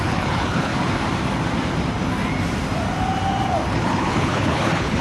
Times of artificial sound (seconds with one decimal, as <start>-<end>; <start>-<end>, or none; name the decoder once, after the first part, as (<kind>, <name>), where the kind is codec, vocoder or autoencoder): 0.0-0.7 (codec, HILCodec); 3.7-5.0